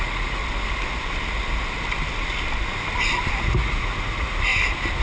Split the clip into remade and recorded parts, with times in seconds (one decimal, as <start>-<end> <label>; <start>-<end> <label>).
0.0-0.4 remade; 0.4-3.4 recorded; 3.4-4.5 remade; 4.5-5.0 recorded